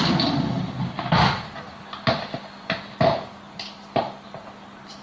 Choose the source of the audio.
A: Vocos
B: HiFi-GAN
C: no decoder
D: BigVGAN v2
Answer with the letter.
C